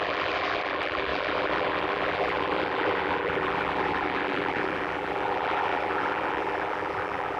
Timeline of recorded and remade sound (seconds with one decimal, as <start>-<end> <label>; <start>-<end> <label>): 0.0-7.4 remade